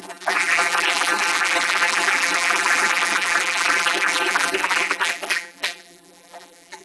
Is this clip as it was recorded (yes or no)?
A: no